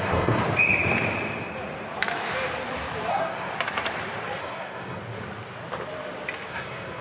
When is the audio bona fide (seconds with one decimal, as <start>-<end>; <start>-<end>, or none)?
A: 0.4-3.1; 3.5-4.4; 5.0-6.5